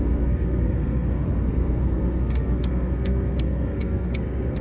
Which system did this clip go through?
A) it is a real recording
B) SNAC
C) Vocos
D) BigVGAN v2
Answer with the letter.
B